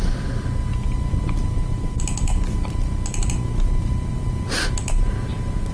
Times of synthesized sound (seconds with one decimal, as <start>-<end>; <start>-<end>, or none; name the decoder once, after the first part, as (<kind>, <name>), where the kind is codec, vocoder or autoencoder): none